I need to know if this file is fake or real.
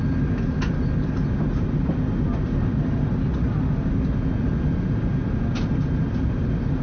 real